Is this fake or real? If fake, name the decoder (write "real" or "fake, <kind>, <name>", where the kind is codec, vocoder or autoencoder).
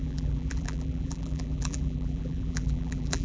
fake, vocoder, BigVGAN v2